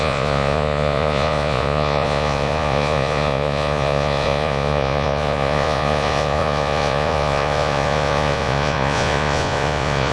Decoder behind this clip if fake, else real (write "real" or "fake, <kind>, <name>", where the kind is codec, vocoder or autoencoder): fake, vocoder, Vocos